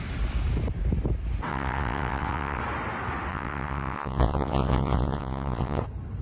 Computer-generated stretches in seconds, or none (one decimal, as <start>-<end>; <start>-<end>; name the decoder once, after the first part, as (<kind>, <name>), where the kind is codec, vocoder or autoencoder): 1.5-2.6 (vocoder, WaveNeXt); 3.3-5.8